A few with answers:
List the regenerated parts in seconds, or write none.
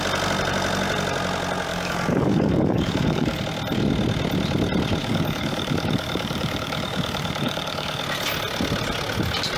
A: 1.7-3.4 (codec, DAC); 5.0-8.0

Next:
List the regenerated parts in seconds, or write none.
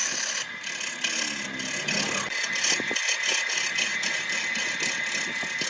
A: none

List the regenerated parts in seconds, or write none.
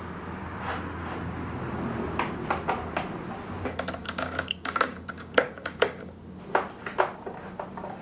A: 4.0-6.2 (codec, DAC)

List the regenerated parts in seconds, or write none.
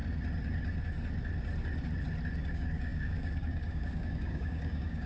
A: 2.5-5.1 (codec, DAC)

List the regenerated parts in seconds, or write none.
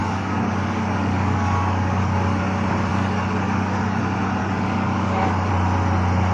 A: 0.0-2.4 (codec, DAC); 2.9-4.0; 4.4-5.5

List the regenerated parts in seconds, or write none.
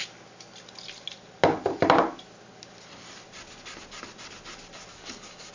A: 4.9-5.5 (codec, DAC)